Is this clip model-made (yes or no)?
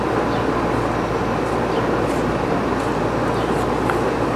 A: no